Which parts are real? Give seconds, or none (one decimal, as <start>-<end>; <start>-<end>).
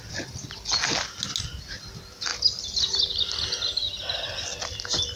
0.0-5.2